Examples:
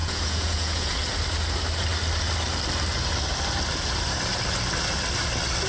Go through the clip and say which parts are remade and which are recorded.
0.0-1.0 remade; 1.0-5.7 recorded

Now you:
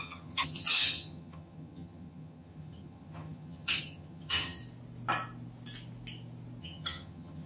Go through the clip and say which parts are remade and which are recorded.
0.0-4.6 remade; 4.6-6.6 recorded; 6.6-7.5 remade

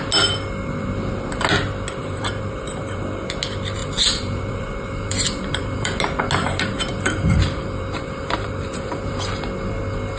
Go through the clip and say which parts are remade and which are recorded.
0.0-2.0 recorded; 2.0-3.2 remade; 3.2-3.8 recorded; 3.8-6.0 remade; 6.0-6.4 recorded; 6.4-9.3 remade; 9.3-10.2 recorded

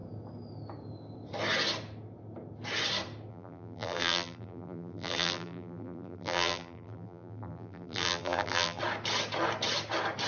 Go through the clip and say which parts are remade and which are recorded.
0.0-3.3 recorded; 3.3-8.8 remade; 8.8-10.3 recorded

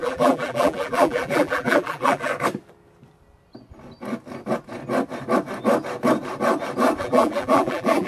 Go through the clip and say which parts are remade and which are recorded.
0.0-2.3 remade; 2.3-7.0 recorded; 7.0-8.1 remade

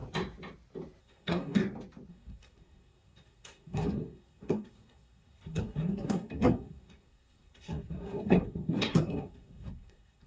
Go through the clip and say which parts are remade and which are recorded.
0.0-1.0 recorded; 1.0-1.6 remade; 1.6-2.1 recorded; 2.1-10.3 remade